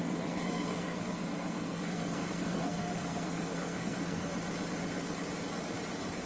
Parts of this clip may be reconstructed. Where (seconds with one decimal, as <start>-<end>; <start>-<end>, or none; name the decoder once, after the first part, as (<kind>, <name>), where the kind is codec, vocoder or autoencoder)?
0.0-4.3 (codec, SNAC)